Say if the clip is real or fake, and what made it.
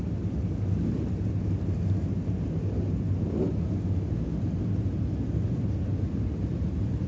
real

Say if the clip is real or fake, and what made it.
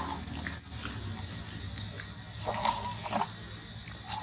real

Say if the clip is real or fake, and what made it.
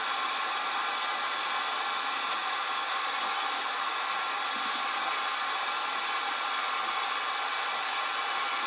real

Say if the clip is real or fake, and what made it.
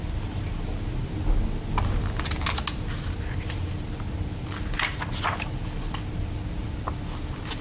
real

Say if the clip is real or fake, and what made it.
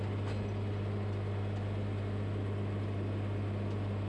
real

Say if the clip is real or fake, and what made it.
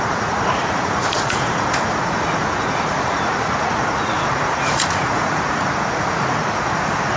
fake, vocoder, Vocos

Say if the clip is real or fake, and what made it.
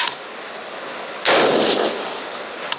real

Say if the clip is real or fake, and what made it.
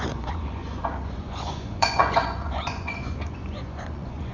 fake, vocoder, Vocos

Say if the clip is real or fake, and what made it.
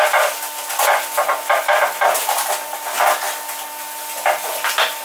real